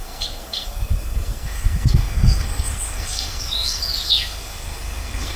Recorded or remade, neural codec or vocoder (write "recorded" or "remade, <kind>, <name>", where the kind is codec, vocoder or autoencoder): remade, codec, SNAC